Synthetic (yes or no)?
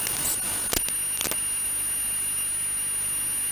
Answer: no